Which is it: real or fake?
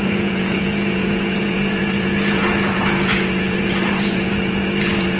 fake